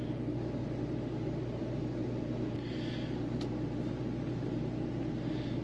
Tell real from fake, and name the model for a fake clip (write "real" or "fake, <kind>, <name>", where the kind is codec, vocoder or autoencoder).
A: real